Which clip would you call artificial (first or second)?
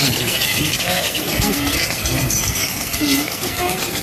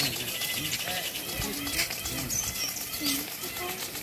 first